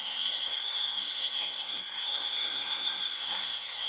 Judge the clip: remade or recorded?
remade